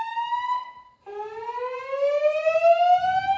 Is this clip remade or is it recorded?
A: recorded